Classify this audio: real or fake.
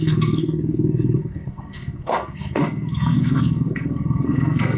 fake